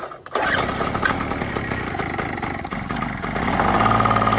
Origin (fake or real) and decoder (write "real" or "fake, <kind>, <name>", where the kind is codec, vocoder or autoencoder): real